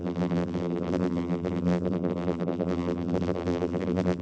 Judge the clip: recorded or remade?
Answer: remade